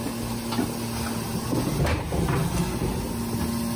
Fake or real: real